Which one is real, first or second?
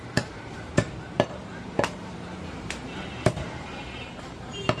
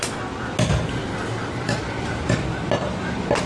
second